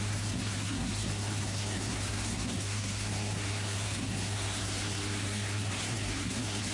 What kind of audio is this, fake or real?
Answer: fake